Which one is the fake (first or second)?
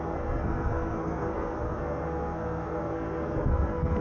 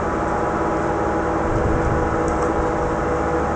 first